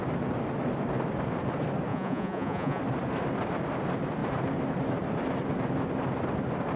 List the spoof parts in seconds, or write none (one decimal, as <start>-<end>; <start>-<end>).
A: 1.9-2.8